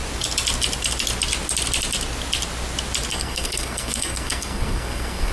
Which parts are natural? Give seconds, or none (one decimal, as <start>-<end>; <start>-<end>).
0.0-3.1